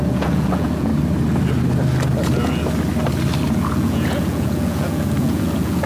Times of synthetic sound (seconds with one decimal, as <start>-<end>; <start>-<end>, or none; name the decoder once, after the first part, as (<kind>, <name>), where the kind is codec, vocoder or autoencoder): 0.0-0.9 (vocoder, Vocos); 3.5-5.9